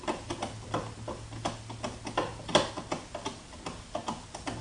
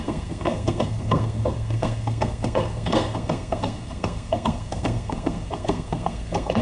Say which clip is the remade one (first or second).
second